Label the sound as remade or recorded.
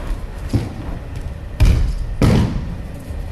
recorded